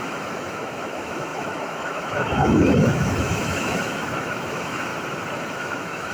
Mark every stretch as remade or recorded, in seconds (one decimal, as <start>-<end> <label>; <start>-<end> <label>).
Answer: 0.0-4.9 remade; 4.9-5.5 recorded; 5.5-6.1 remade